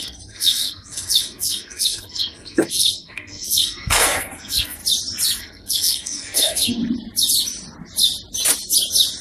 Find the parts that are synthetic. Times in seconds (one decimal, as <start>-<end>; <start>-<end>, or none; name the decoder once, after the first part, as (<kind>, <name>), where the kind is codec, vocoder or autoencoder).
0.0-4.8 (codec, SNAC); 5.4-6.8